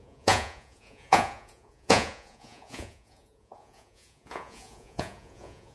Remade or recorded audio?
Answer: remade